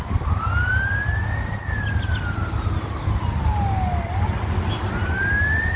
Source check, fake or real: real